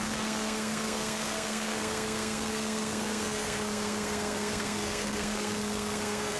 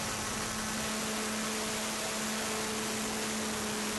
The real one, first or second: second